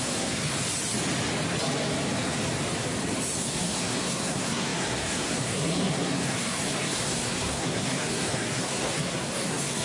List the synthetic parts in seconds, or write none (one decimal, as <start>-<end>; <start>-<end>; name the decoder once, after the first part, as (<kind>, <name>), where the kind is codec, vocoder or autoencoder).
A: 0.0-0.5 (codec, SNAC); 3.4-9.8